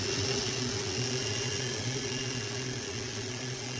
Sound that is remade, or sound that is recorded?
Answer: remade